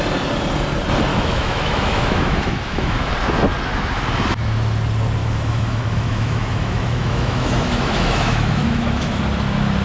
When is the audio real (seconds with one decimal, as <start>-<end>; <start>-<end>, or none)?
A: 0.0-1.1; 3.1-5.2; 9.2-9.8